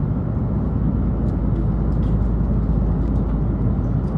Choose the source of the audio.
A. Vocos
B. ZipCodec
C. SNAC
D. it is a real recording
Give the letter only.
D